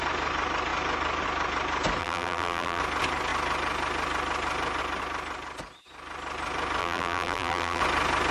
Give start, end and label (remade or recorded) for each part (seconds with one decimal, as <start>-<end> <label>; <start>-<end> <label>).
0.0-2.0 recorded; 2.0-2.8 remade; 2.8-6.8 recorded; 6.8-7.8 remade; 7.8-8.3 recorded